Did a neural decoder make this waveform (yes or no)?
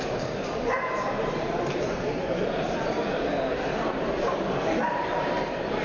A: yes